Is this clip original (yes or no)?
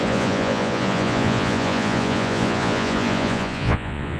no